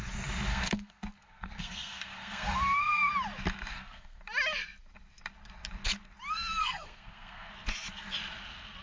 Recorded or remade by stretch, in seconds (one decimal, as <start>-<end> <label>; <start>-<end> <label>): 0.0-0.5 recorded; 0.5-3.1 remade; 3.1-3.7 recorded; 3.7-4.2 remade; 4.2-6.6 recorded; 6.6-7.5 remade; 7.5-8.8 recorded